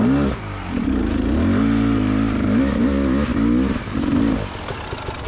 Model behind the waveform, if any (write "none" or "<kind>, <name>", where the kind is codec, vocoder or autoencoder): none